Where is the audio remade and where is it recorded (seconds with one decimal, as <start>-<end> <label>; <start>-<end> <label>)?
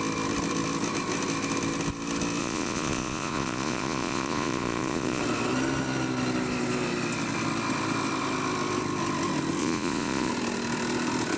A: 0.0-2.4 recorded; 2.4-5.2 remade; 5.2-9.6 recorded; 9.6-10.3 remade; 10.3-11.4 recorded